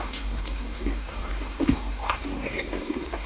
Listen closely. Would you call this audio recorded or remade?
remade